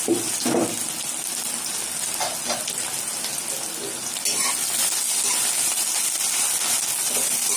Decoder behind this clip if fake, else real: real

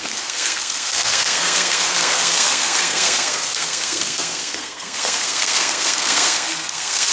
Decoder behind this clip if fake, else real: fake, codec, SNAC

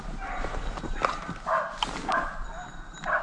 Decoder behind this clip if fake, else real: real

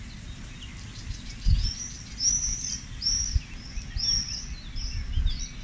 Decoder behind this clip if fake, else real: real